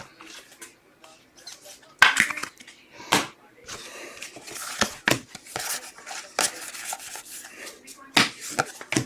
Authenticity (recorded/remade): recorded